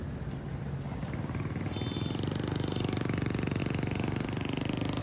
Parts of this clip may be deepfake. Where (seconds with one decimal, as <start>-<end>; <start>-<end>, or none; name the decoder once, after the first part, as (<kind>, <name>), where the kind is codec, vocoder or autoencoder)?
none